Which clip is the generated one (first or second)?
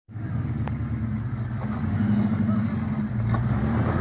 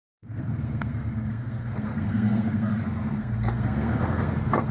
second